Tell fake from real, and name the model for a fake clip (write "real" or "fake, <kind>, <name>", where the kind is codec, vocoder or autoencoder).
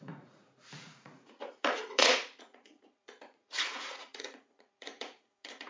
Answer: fake, vocoder, Vocos